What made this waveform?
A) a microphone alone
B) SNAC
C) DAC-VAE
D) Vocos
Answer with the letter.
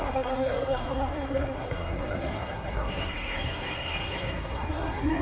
B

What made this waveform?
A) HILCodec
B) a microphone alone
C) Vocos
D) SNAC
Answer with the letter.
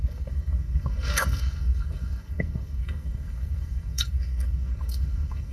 D